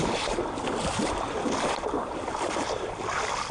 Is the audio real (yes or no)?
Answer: no